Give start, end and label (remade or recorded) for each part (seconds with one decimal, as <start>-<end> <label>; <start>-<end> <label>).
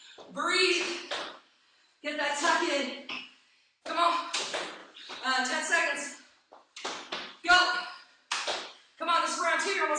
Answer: 0.0-10.0 recorded